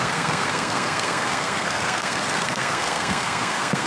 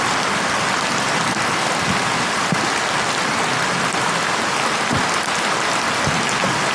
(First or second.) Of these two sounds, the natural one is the second